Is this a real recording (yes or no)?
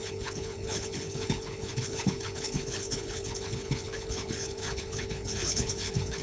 no